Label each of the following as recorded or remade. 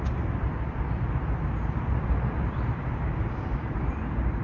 remade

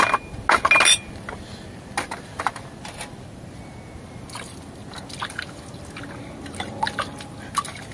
recorded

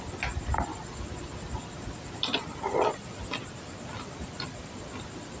recorded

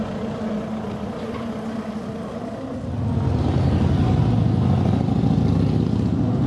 recorded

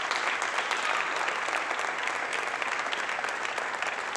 recorded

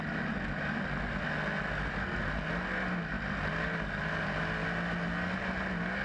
recorded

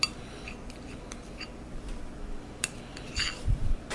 recorded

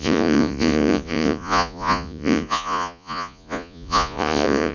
remade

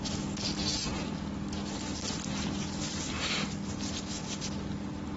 recorded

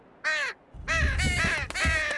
recorded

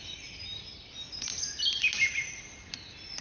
recorded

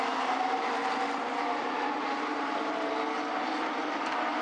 recorded